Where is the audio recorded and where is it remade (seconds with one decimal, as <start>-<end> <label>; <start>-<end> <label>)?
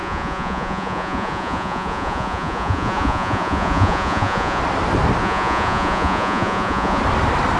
0.0-4.6 remade; 4.6-5.2 recorded; 5.2-7.0 remade; 7.0-7.6 recorded